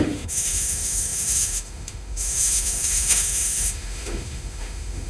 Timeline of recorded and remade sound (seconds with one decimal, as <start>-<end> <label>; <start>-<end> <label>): 0.0-5.1 remade